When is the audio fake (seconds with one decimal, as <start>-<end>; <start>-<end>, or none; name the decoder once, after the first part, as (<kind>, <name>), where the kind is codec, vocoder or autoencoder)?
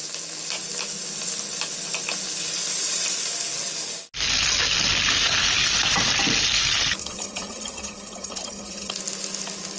7.0-8.9 (vocoder, HiFi-GAN)